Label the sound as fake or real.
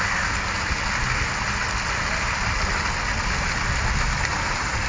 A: real